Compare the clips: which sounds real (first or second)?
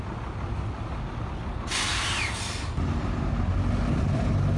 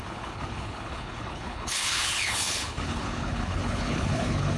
first